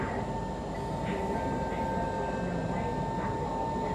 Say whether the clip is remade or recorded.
recorded